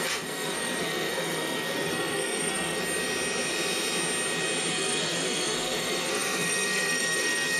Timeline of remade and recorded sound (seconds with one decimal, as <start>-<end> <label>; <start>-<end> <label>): 0.0-2.8 remade; 2.8-4.7 recorded; 4.7-7.6 remade